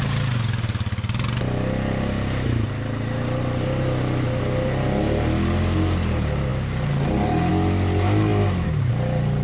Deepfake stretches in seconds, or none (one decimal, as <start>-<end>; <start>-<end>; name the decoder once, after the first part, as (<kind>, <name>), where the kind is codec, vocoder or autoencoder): none